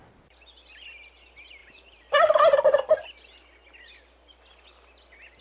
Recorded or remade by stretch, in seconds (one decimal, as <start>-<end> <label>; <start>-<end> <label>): 0.0-1.6 recorded; 1.6-2.6 remade; 2.6-5.4 recorded